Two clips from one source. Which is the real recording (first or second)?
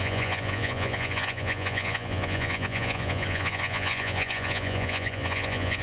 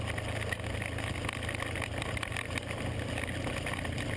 second